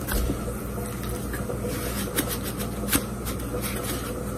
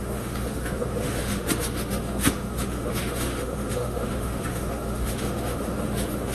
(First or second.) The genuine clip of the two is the first